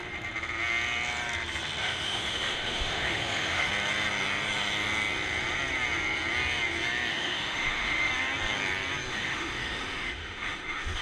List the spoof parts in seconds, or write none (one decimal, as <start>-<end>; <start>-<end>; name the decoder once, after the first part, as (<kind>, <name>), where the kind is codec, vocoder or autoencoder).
1.8-3.7 (autoencoder, DAC-VAE); 7.1-8.1; 9.1-11.0